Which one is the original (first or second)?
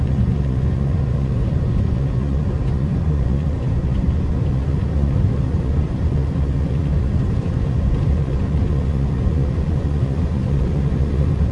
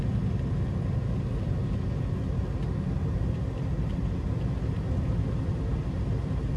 second